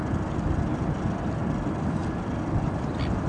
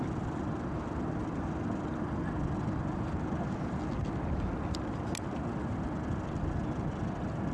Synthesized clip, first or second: first